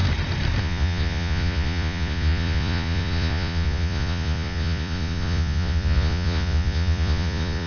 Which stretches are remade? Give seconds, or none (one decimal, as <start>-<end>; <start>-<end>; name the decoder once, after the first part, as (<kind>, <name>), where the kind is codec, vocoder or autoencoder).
0.6-7.7 (vocoder, Vocos)